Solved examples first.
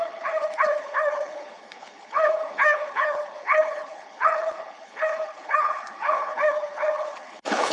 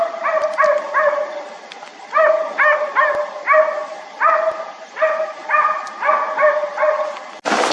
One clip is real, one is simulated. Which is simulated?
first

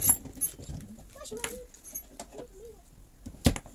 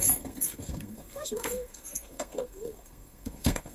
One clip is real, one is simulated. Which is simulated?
second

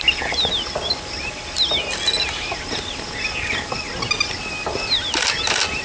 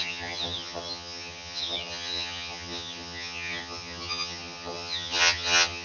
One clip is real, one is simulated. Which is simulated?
second